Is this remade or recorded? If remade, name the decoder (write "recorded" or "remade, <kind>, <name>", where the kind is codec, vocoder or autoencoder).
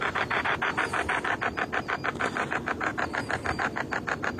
recorded